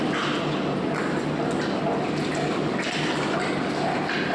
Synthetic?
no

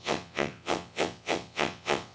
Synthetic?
yes